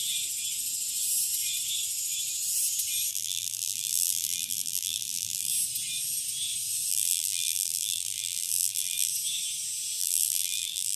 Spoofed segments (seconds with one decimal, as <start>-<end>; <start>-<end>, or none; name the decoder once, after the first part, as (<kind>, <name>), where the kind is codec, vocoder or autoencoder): 3.1-5.5 (vocoder, BigVGAN v2); 6.9-9.1; 10.0-11.0